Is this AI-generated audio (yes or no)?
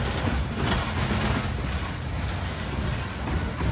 no